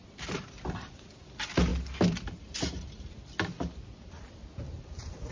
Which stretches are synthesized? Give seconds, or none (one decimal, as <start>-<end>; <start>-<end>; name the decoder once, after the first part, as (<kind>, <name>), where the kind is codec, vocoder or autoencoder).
none